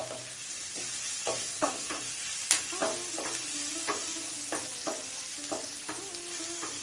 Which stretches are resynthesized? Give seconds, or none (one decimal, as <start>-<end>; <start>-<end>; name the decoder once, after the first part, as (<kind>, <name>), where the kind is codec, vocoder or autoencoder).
1.4-2.0 (codec, SNAC)